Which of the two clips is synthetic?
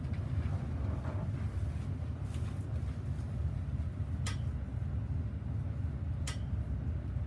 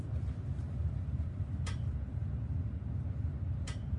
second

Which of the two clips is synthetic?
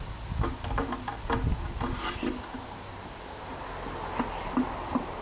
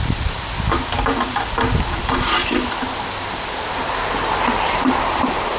second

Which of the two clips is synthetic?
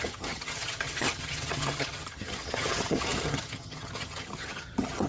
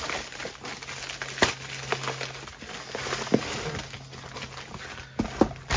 first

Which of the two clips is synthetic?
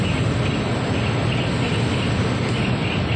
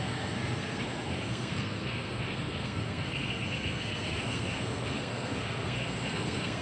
second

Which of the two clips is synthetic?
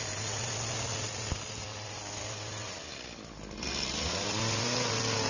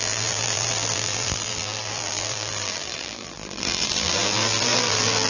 second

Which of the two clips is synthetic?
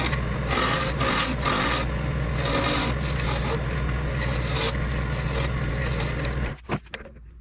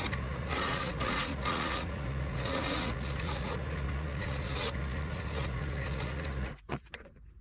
second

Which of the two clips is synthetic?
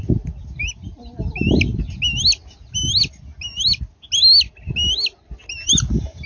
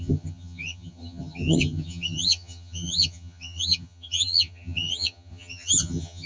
second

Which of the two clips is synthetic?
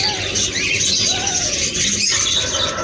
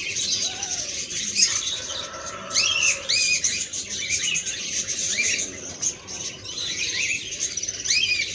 second